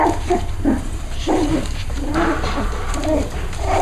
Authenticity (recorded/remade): remade